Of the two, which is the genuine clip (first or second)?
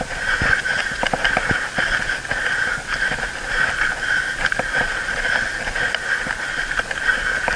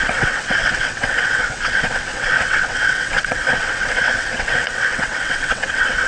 first